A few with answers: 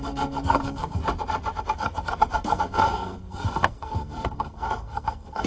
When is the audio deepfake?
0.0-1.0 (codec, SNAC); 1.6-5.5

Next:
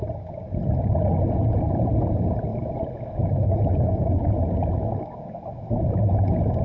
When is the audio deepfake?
2.5-6.6 (autoencoder, DAC-VAE)

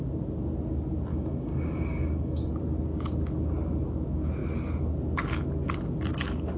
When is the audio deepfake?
1.1-2.5 (codec, DAC)

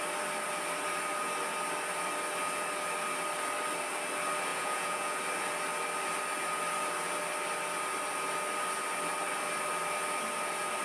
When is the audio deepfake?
4.5-5.2 (vocoder, Vocos)

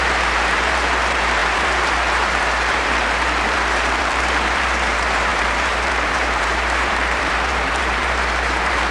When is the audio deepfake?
0.0-8.9 (vocoder, BigVGAN v2)

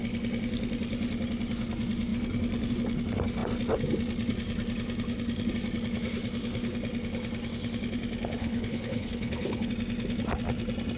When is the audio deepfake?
8.4-9.7 (codec, HILCodec)